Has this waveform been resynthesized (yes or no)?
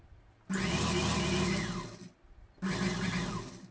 no